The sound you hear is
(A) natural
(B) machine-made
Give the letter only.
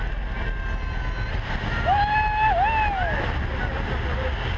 A